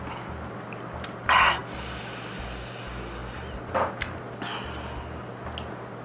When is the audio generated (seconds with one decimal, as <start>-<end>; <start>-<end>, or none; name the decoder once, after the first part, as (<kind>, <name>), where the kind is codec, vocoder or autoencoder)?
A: none